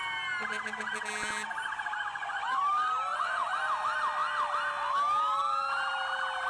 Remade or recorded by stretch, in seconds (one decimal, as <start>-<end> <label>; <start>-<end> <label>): 0.0-2.1 recorded; 2.1-2.6 remade; 2.6-3.1 recorded; 3.1-3.6 remade; 3.6-6.5 recorded